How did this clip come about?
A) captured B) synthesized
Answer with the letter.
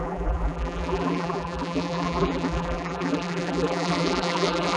B